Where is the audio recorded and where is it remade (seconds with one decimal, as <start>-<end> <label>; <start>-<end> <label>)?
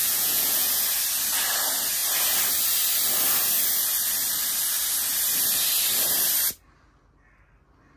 0.0-0.8 remade; 0.8-8.0 recorded